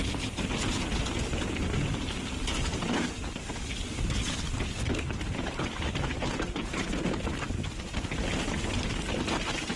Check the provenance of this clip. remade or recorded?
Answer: recorded